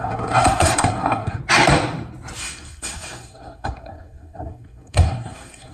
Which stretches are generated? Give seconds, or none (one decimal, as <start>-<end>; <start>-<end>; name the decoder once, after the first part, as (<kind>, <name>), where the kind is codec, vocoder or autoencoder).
0.0-1.4 (codec, SNAC); 2.4-5.7